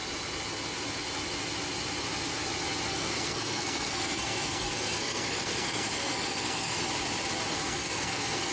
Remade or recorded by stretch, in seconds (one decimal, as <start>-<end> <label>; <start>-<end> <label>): 0.0-2.9 recorded; 2.9-6.8 remade; 6.8-7.5 recorded; 7.5-8.5 remade